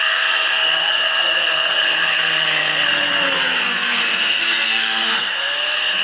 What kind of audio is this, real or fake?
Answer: fake